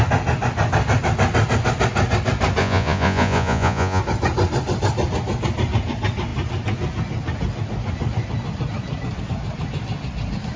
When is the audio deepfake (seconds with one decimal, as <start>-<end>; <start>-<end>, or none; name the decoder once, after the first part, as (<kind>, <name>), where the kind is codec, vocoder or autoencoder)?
2.6-4.0 (vocoder, Vocos)